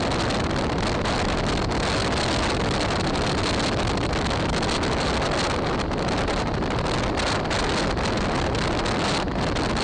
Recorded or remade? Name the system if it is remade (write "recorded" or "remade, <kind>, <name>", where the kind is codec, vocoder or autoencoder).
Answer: recorded